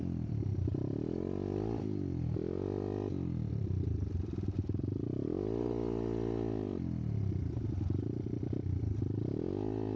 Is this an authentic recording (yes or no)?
no